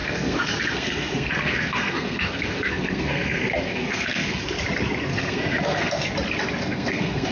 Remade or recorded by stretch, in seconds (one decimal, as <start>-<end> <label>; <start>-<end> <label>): 0.0-4.4 remade; 4.4-5.1 recorded; 5.1-6.1 remade; 6.1-6.6 recorded; 6.6-7.3 remade

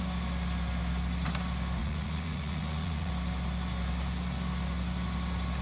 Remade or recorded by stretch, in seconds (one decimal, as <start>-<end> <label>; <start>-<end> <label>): 0.0-1.8 recorded; 1.8-3.1 remade; 3.1-5.6 recorded

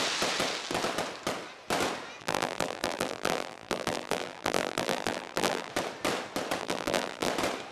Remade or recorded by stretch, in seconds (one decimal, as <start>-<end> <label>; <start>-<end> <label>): 0.0-2.2 recorded; 2.2-5.7 remade; 5.7-6.6 recorded; 6.6-7.3 remade; 7.3-7.7 recorded

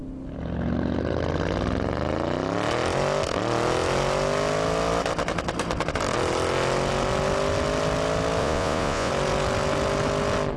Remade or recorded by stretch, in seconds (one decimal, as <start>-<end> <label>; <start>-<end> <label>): 0.0-8.4 recorded; 8.4-9.1 remade; 9.1-10.6 recorded

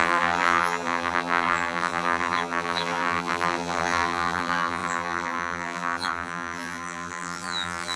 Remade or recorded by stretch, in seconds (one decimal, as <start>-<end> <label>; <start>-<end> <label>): 0.0-8.0 remade

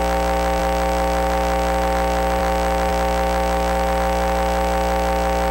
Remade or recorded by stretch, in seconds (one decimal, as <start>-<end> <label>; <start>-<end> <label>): 0.0-5.5 recorded

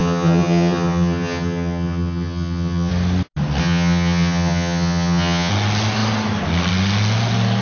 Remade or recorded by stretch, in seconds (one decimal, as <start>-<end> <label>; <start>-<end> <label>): 0.0-2.9 remade; 2.9-3.6 recorded; 3.6-5.5 remade; 5.5-7.6 recorded

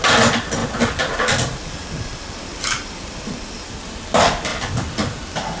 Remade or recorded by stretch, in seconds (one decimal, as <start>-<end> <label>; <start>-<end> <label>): 0.0-0.6 recorded; 0.6-4.0 remade; 4.0-5.6 recorded